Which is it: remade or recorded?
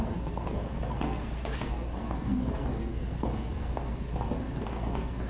remade